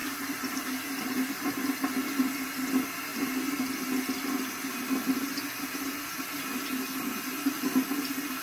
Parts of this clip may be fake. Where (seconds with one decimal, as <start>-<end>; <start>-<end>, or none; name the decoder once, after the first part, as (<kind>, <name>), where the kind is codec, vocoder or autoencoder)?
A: 0.0-1.5 (vocoder, BigVGAN v2)